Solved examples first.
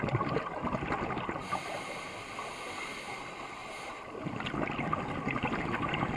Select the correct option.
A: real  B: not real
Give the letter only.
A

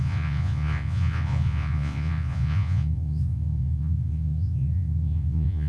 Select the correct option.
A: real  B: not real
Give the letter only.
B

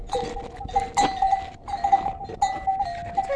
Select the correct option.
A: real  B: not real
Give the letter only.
A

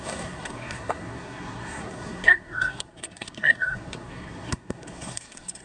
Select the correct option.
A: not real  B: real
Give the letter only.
A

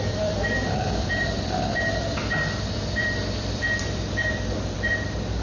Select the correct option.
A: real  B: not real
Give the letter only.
B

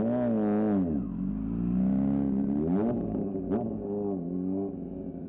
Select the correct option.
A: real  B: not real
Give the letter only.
A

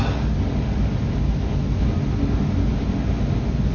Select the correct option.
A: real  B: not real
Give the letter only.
A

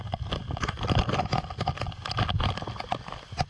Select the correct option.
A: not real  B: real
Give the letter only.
B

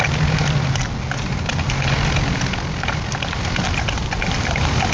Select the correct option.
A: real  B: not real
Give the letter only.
A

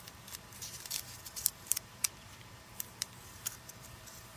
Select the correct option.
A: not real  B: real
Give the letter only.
A